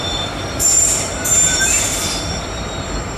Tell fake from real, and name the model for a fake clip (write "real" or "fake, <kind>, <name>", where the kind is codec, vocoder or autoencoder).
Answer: fake, vocoder, BigVGAN v2